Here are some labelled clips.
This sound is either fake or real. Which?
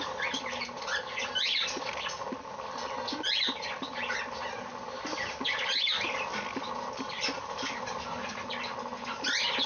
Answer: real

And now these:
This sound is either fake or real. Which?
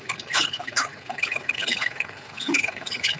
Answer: fake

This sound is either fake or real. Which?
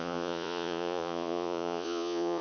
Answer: fake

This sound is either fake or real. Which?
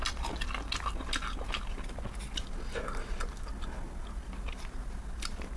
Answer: real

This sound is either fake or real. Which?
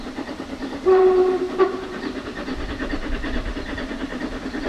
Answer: real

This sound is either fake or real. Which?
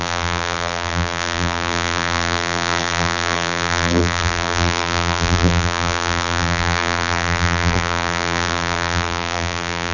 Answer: fake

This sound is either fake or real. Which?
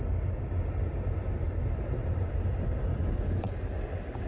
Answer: real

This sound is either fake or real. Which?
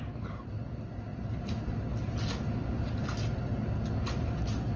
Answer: real